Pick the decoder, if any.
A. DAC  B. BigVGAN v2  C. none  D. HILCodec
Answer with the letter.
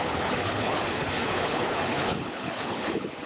D